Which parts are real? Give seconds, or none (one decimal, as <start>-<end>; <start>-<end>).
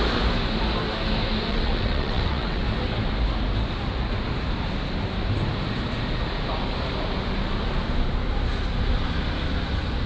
0.0-1.5; 2.6-10.1